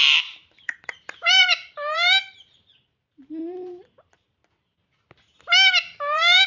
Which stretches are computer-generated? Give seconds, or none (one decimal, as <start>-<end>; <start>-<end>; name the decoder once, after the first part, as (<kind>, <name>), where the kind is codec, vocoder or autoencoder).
0.0-4.4 (vocoder, BigVGAN v2); 6.0-6.5